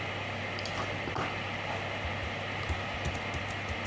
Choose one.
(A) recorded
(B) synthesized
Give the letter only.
A